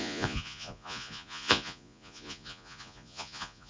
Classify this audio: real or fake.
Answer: fake